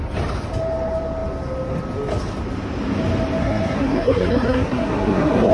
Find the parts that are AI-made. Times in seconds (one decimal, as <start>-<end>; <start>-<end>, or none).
3.4-5.5